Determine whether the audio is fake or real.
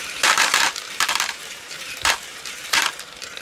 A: fake